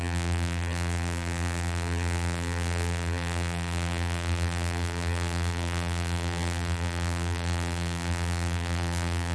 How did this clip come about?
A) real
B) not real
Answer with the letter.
B